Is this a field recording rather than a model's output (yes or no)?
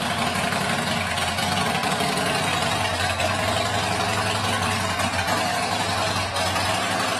yes